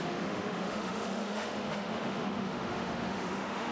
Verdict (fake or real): fake